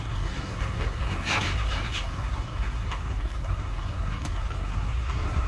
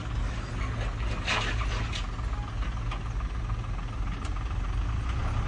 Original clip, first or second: second